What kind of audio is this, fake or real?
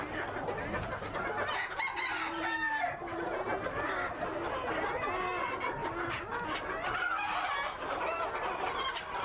real